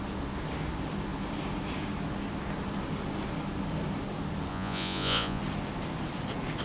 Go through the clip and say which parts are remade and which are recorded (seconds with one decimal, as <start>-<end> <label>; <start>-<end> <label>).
0.0-4.5 recorded; 4.5-5.4 remade; 5.4-6.6 recorded